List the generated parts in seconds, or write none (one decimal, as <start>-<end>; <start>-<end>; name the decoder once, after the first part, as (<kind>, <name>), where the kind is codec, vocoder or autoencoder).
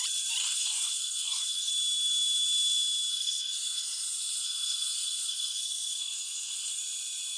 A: 0.4-1.7 (codec, SNAC); 3.1-6.8